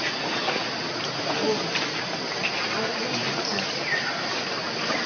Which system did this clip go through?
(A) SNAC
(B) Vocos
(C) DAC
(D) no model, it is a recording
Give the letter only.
D